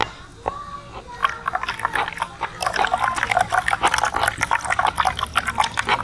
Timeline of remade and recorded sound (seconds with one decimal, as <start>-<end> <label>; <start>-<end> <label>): 0.0-6.0 recorded